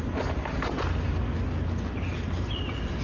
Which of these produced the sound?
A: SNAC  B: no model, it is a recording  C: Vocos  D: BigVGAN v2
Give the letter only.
B